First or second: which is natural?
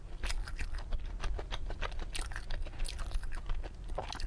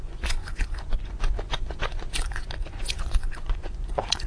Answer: first